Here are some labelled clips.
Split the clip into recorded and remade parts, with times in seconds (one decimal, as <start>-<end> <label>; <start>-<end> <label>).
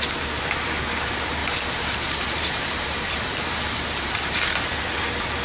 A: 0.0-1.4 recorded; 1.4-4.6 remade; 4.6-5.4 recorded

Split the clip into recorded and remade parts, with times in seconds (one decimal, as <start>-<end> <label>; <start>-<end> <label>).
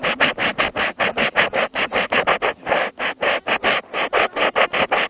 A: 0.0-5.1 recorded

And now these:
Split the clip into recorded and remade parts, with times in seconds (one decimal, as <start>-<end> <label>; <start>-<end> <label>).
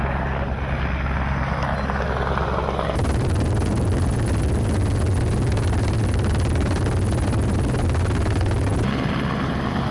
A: 0.0-9.9 recorded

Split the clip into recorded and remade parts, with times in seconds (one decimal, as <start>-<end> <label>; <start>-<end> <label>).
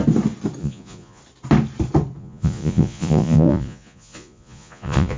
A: 0.0-0.6 recorded; 0.6-1.2 remade; 1.2-2.2 recorded; 2.2-5.2 remade